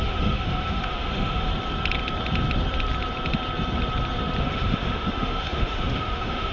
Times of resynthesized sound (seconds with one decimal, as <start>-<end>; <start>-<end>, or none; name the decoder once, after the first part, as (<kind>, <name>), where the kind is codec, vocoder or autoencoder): 0.0-1.5 (autoencoder, DAC-VAE); 4.4-6.5